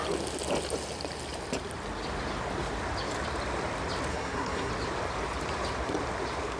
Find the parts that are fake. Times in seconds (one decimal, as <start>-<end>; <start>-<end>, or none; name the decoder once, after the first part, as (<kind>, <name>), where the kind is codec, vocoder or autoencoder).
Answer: 4.1-4.7 (codec, SNAC)